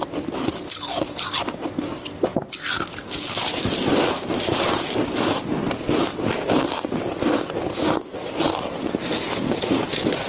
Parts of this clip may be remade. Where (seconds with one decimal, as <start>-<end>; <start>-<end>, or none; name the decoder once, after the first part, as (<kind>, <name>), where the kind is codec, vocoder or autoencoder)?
0.0-2.3 (vocoder, BigVGAN v2); 3.7-5.5